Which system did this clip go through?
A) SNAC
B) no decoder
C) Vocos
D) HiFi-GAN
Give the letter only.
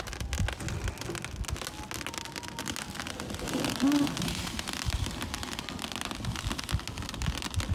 B